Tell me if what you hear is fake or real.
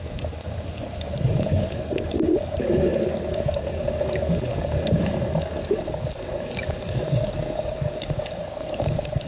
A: fake